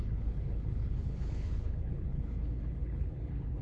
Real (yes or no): no